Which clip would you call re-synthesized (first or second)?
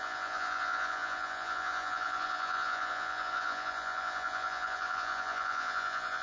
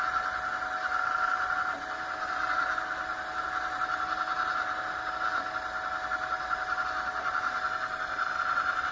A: first